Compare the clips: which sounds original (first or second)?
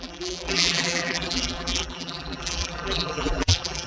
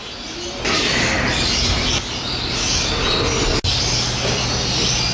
second